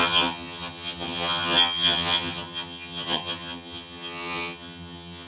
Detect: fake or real fake